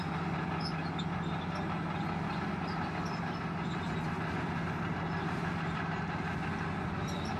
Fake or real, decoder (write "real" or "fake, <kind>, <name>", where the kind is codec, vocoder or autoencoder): real